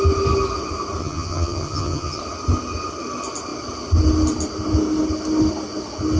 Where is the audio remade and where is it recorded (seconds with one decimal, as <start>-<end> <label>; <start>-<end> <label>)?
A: 0.0-1.0 recorded; 1.0-2.2 remade; 2.2-6.2 recorded